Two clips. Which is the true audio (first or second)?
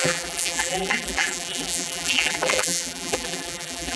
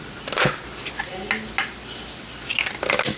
second